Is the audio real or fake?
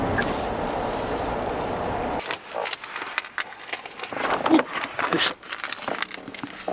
fake